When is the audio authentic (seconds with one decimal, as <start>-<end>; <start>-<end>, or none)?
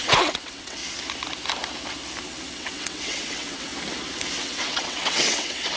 0.8-2.5; 3.7-4.4